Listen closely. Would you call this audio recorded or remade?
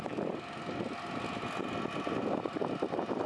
recorded